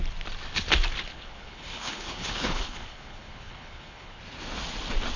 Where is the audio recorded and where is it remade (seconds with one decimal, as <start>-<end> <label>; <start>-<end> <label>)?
0.0-1.1 recorded; 1.1-4.2 remade; 4.2-5.2 recorded